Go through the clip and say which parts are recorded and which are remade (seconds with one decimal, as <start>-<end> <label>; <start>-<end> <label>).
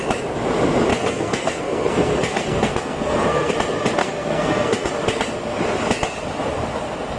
0.0-0.9 recorded; 0.9-3.5 remade; 3.5-4.0 recorded; 4.0-4.9 remade; 4.9-7.2 recorded